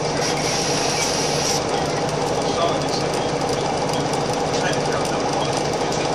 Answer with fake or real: real